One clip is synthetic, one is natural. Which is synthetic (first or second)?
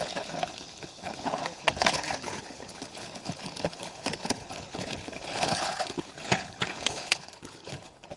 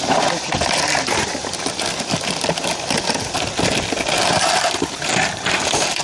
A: first